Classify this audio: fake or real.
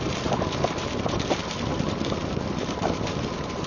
fake